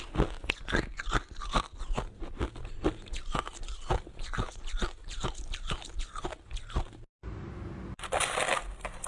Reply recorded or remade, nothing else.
recorded